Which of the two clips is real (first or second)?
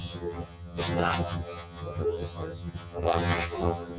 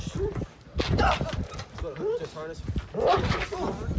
second